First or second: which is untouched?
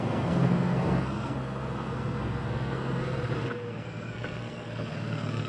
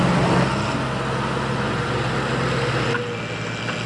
second